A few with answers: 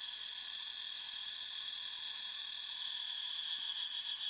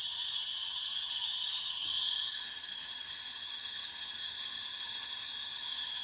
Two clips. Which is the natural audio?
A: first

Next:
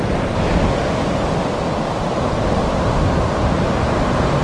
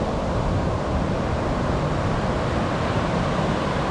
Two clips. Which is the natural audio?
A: first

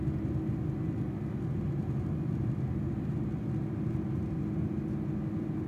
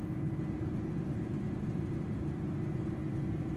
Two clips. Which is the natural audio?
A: first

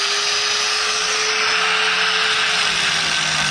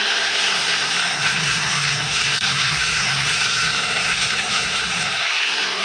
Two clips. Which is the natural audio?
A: first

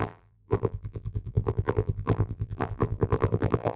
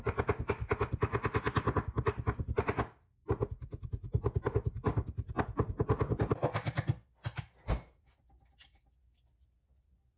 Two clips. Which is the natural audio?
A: second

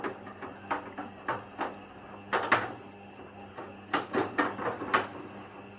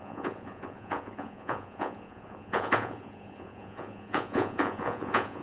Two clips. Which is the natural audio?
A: first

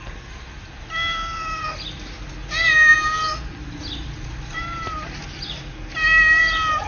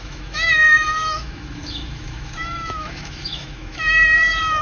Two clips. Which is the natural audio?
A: first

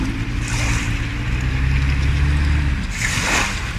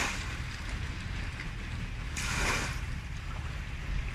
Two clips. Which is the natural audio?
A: first